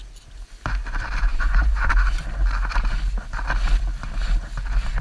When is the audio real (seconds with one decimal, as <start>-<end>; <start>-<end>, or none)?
0.0-1.3; 1.9-5.0